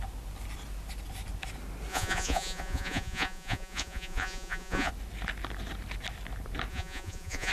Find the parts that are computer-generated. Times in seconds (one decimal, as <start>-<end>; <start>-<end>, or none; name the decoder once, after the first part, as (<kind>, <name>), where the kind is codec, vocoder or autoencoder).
1.9-4.9 (vocoder, Vocos); 6.7-7.5